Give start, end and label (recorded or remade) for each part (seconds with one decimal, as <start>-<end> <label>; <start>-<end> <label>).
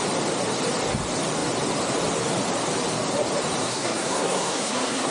0.0-3.6 recorded; 3.6-5.1 remade